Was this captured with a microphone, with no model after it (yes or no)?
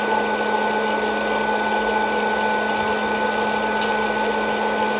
yes